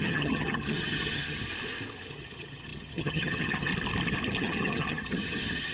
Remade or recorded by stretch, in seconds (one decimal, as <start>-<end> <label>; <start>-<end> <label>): 0.0-1.5 remade; 1.5-2.1 recorded; 2.1-3.7 remade; 3.7-4.4 recorded; 4.4-5.7 remade